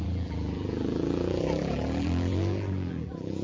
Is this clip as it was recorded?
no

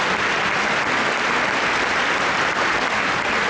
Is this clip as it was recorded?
yes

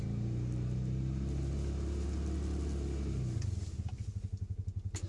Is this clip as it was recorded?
yes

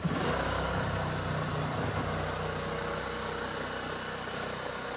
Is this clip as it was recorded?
yes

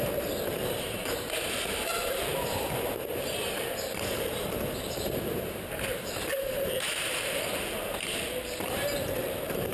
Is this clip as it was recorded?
no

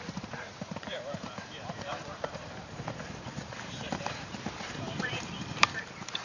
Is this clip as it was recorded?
no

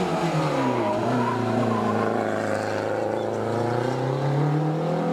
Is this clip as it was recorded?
yes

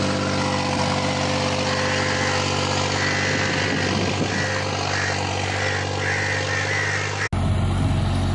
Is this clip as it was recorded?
yes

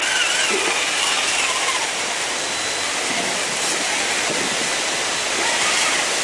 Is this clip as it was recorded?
yes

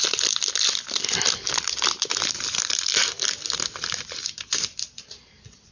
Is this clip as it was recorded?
no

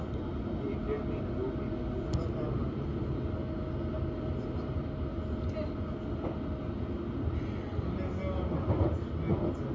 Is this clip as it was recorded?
yes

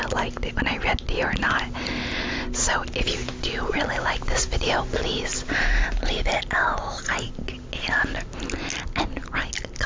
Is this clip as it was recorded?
yes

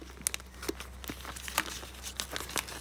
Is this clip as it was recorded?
yes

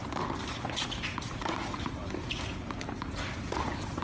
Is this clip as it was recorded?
yes